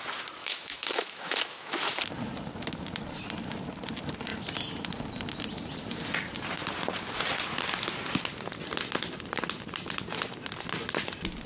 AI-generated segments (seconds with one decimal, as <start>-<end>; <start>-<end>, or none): 0.4-2.0

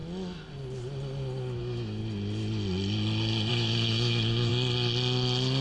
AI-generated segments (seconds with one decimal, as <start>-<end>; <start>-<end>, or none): 1.6-2.0; 3.5-4.5

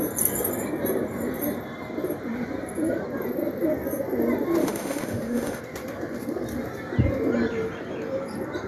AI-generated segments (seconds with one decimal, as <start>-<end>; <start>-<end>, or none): 4.6-5.6

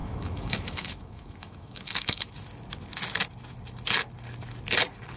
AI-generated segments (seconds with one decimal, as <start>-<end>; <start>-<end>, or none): 0.0-2.3

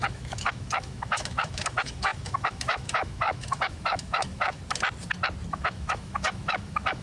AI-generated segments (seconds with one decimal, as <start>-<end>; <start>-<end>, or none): 0.0-4.6; 5.5-7.0

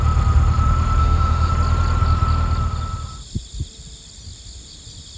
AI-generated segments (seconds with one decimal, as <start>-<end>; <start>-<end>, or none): 1.0-1.5

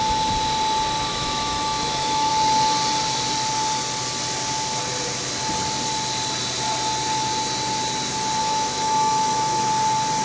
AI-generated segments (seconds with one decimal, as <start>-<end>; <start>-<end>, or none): 1.1-2.3; 8.4-9.7